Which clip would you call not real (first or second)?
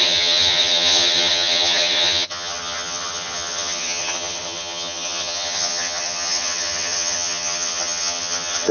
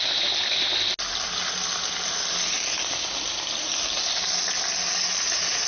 first